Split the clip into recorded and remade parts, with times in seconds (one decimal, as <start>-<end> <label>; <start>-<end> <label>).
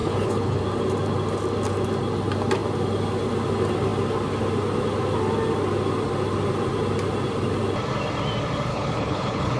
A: 0.0-0.6 remade; 0.6-8.7 recorded; 8.7-9.6 remade